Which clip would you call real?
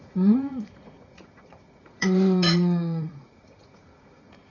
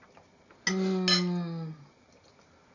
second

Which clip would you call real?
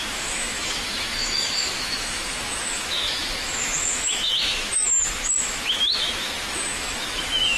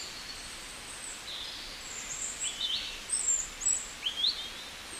second